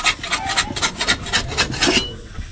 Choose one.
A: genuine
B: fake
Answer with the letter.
A